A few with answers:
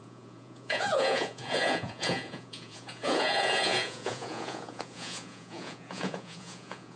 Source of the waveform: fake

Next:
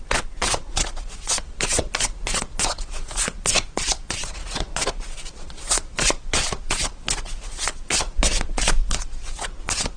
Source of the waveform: fake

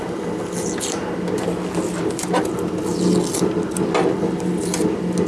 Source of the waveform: real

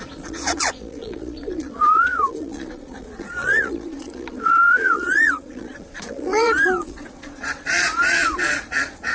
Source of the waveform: fake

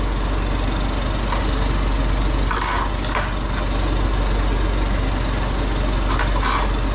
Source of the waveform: real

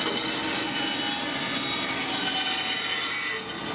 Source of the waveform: real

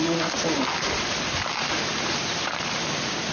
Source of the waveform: real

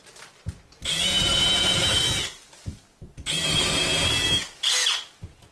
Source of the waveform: real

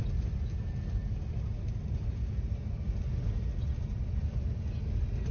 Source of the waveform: real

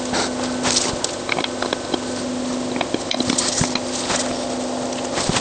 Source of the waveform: real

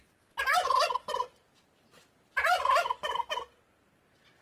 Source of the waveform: real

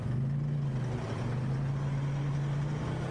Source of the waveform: real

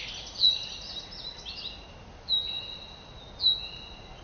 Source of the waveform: real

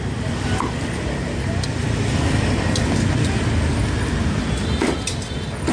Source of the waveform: real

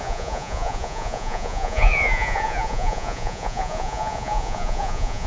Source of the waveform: fake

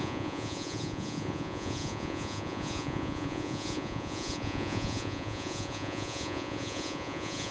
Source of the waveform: fake